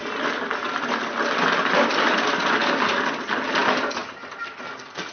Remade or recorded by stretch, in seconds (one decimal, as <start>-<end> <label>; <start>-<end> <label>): 0.0-5.1 recorded